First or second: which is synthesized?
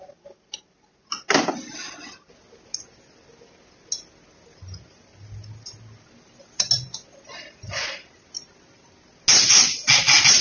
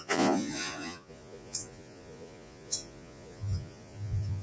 second